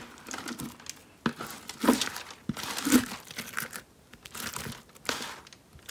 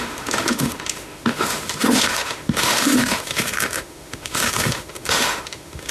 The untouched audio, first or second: first